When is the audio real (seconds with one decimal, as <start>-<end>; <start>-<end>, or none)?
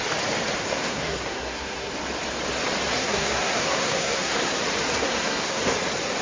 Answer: 0.0-0.6; 1.9-2.9; 4.6-5.0; 5.6-6.2